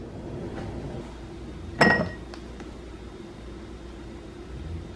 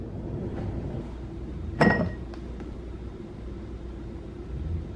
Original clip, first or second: first